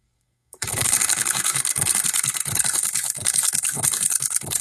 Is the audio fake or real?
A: fake